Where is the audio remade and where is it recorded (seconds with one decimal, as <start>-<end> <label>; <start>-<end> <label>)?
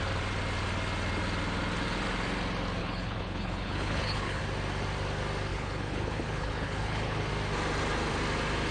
0.0-2.8 recorded; 2.8-4.4 remade; 4.4-5.5 recorded; 5.5-7.3 remade; 7.3-8.7 recorded